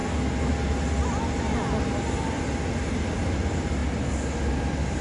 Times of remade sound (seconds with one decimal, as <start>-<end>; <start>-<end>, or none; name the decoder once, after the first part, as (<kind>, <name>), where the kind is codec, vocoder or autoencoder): none